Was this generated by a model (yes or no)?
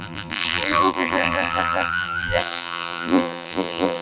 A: yes